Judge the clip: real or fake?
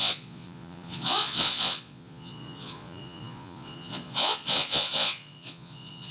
fake